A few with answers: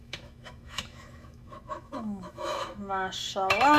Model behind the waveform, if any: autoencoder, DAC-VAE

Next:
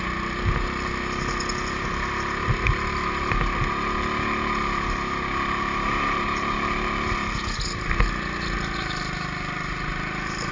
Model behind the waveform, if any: none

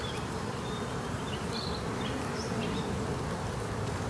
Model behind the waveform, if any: vocoder, BigVGAN v2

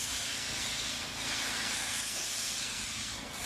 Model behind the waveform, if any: codec, SNAC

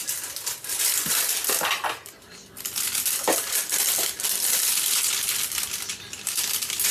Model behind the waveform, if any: none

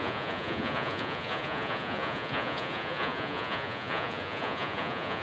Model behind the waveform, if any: vocoder, Vocos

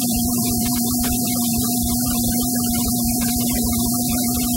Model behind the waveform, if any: vocoder, BigVGAN v2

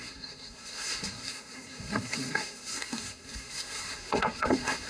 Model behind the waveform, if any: codec, SNAC